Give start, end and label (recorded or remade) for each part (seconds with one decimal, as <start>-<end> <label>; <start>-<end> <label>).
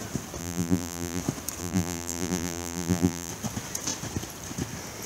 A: 0.0-0.4 recorded; 0.4-1.2 remade; 1.2-1.6 recorded; 1.6-3.3 remade; 3.3-5.1 recorded